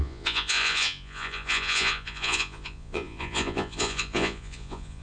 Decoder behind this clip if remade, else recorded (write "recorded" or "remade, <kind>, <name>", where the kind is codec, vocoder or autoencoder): remade, vocoder, Vocos